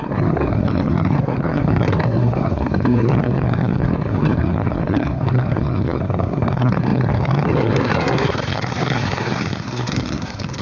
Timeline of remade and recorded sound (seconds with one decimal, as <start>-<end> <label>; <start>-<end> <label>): 0.0-10.6 remade